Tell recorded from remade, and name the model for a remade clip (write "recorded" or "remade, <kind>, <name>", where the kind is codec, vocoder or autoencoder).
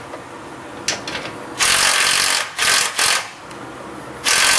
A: recorded